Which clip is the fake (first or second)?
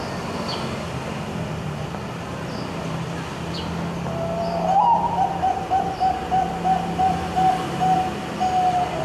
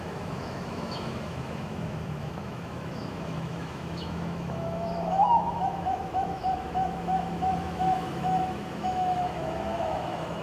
second